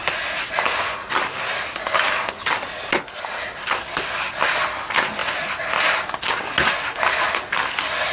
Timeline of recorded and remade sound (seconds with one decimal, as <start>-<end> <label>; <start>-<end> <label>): 0.0-8.1 recorded